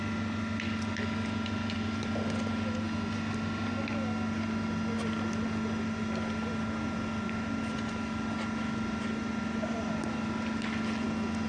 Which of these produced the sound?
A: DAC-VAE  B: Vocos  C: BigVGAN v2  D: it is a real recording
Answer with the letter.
D